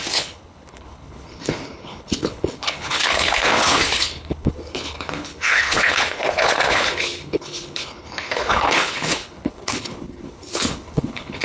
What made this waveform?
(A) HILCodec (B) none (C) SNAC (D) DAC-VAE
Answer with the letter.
A